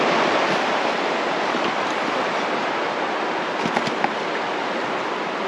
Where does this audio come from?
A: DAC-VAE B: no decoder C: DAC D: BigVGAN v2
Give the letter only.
B